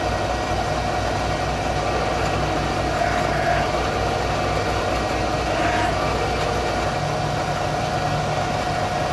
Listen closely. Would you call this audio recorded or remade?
recorded